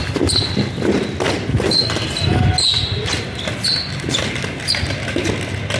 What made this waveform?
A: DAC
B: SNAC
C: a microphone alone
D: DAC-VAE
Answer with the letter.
C